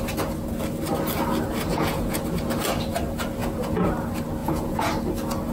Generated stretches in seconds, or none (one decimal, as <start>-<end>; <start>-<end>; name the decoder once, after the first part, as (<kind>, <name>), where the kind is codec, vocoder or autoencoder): 1.7-2.2 (vocoder, Vocos); 3.4-3.9; 4.4-4.9